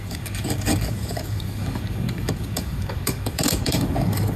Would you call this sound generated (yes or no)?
yes